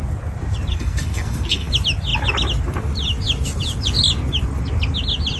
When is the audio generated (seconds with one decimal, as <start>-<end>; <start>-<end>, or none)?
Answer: 0.7-1.7